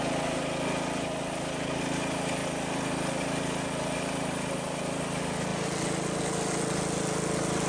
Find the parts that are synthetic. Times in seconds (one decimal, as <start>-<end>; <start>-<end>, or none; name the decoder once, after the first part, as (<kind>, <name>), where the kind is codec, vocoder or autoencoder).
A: none